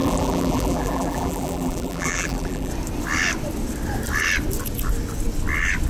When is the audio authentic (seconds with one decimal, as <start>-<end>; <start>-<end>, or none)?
2.7-5.9